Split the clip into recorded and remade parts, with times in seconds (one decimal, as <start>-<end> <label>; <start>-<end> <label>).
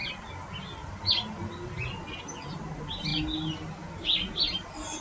0.0-5.0 recorded